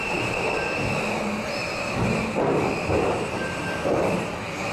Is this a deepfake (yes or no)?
no